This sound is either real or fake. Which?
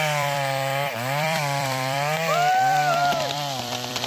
fake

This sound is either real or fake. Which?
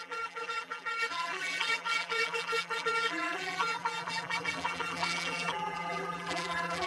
fake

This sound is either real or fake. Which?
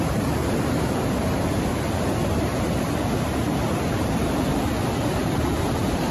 fake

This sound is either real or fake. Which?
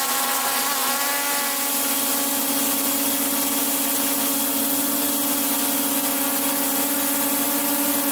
real